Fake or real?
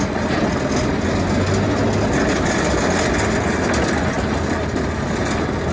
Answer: real